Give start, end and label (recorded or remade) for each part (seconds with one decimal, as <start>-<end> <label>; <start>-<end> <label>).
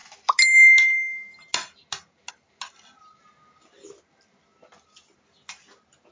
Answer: 0.0-6.1 recorded